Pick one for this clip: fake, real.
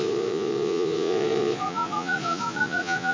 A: fake